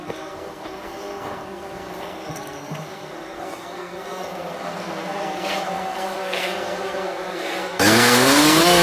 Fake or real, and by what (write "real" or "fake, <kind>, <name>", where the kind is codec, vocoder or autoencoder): fake, codec, SNAC